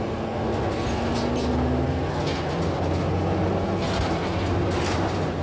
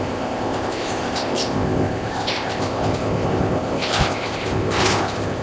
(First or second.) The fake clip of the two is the second